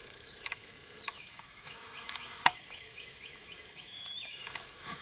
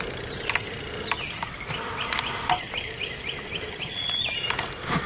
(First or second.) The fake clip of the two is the first